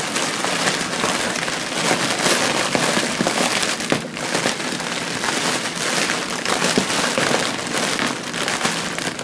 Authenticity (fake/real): real